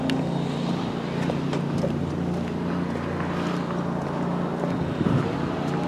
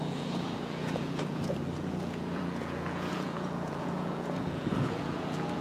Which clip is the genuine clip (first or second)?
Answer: first